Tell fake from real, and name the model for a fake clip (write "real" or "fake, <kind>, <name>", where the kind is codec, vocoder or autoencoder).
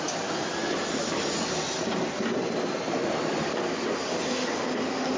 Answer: real